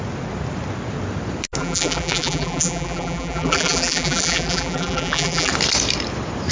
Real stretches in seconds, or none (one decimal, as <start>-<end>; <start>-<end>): 0.0-1.6; 5.5-6.5